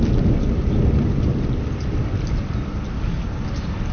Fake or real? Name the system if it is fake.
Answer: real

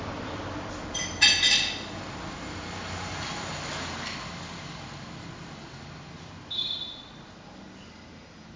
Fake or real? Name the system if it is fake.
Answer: real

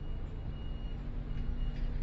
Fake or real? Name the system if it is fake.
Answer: real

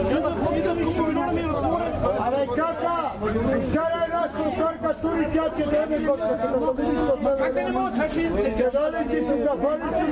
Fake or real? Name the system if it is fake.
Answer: real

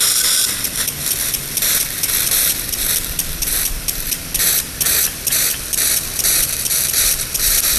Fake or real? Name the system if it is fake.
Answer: fake, vocoder, BigVGAN v2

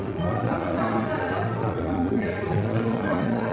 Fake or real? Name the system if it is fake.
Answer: fake, vocoder, Vocos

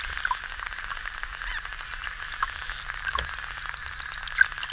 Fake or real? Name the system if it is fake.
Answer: real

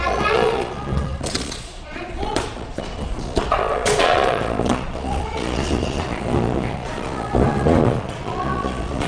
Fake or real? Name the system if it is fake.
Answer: fake, vocoder, Vocos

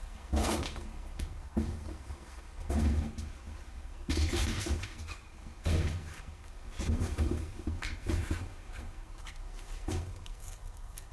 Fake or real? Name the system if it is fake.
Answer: fake, codec, SNAC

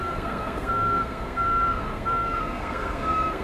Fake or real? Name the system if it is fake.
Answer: fake, codec, SNAC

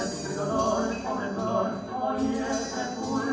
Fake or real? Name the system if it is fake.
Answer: real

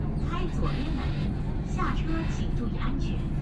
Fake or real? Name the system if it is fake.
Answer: real